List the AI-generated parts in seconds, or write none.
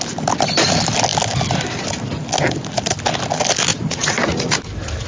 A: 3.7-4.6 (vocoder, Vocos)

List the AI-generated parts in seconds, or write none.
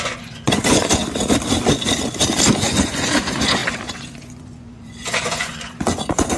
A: 0.0-1.0 (vocoder, Vocos); 2.6-6.4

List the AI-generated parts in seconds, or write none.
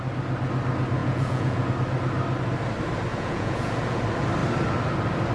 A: 1.0-1.7 (vocoder, Vocos); 3.1-4.0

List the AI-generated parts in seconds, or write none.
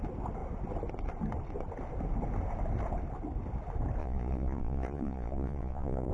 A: 4.0-6.1 (vocoder, Vocos)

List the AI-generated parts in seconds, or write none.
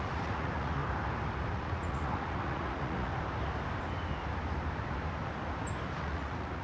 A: 0.0-0.8 (vocoder, Vocos); 1.5-3.1; 6.0-6.6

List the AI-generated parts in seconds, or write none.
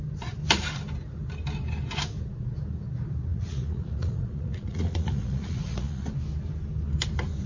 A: 3.3-6.1 (vocoder, Vocos)